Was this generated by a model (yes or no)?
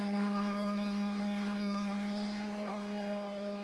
yes